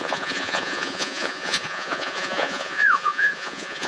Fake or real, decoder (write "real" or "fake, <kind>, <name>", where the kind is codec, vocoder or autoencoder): fake, vocoder, Vocos